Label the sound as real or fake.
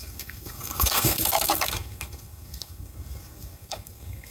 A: fake